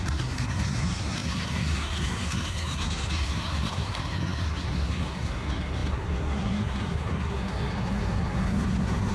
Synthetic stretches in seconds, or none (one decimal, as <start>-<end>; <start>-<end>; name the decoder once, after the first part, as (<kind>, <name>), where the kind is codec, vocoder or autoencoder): 0.0-9.1 (codec, SNAC)